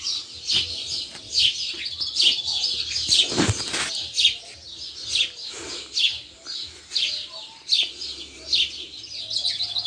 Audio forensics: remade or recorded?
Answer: recorded